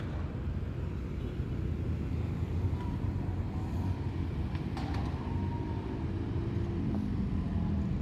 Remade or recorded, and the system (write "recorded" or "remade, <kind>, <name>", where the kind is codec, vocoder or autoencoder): recorded